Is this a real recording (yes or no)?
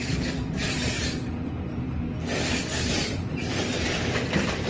yes